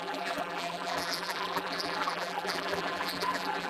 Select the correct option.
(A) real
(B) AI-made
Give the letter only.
B